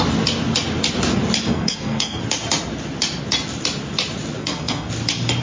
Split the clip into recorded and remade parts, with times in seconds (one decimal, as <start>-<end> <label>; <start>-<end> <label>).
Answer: 0.0-1.5 recorded; 1.5-2.2 remade; 2.2-4.4 recorded; 4.4-4.9 remade; 4.9-5.4 recorded